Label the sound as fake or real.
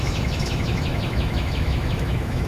fake